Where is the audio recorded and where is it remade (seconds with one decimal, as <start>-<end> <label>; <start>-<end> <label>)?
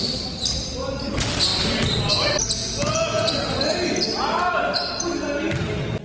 0.0-2.6 recorded; 2.6-3.3 remade; 3.3-6.0 recorded